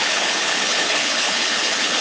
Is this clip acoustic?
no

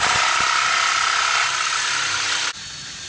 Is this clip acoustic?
yes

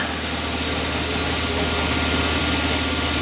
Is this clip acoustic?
yes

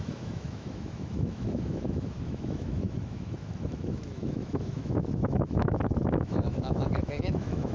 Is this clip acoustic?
no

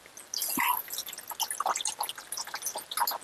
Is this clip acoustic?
yes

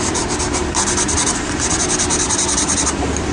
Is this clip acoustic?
yes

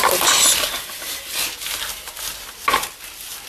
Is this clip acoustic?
yes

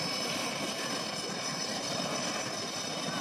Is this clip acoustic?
yes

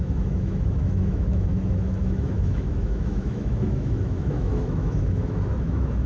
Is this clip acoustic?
no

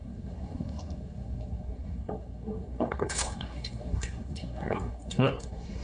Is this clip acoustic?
no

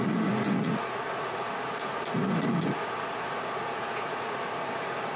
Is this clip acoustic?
no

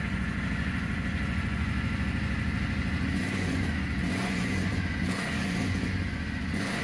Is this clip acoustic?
no